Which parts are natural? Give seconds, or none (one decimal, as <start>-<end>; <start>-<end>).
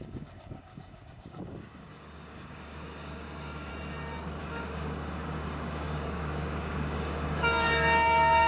3.7-4.4